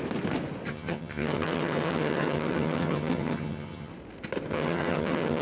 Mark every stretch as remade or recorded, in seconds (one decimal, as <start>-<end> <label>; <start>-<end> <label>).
0.0-0.7 recorded; 0.7-3.9 remade; 3.9-4.5 recorded; 4.5-5.4 remade

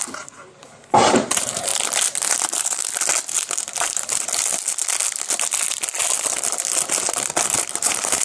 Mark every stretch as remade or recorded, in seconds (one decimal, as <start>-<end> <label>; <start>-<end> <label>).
0.0-1.7 remade; 1.7-2.3 recorded; 2.3-2.8 remade; 2.8-7.7 recorded; 7.7-8.2 remade